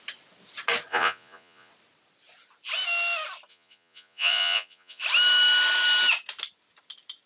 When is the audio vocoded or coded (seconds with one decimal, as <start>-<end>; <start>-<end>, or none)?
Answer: 0.9-1.7; 3.5-5.0